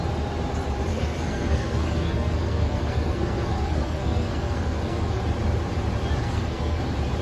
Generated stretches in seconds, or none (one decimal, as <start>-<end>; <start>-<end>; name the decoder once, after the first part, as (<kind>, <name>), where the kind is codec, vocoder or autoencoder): 0.9-5.2 (codec, SNAC); 6.2-6.8